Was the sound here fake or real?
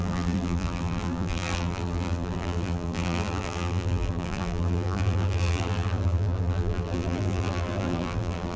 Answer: fake